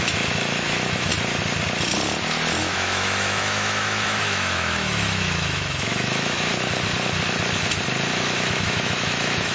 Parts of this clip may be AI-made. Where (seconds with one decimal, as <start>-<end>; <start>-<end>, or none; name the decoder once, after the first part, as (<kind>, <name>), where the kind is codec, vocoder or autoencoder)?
0.0-1.1 (autoencoder, DAC-VAE); 2.6-6.5; 8.1-9.5